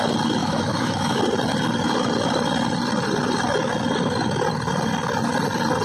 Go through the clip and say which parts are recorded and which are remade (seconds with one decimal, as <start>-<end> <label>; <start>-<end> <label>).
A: 0.0-0.4 recorded; 0.4-1.2 remade; 1.2-5.8 recorded

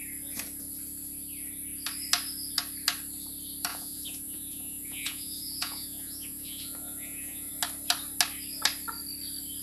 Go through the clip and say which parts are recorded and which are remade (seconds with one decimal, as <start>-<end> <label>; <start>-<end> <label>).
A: 0.0-3.7 recorded; 3.7-7.5 remade; 7.5-9.6 recorded